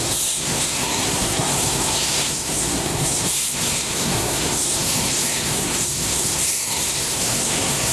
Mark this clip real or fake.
fake